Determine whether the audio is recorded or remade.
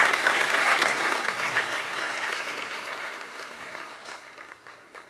remade